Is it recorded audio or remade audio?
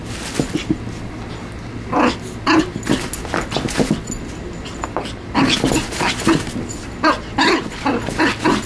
recorded